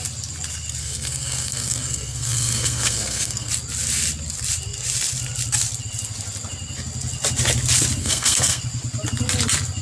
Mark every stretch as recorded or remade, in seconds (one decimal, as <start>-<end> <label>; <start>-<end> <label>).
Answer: 0.0-0.8 recorded; 0.8-3.5 remade; 3.5-8.0 recorded; 8.0-8.6 remade; 8.6-9.8 recorded